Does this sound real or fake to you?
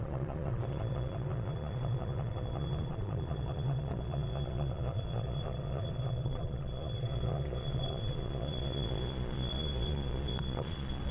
fake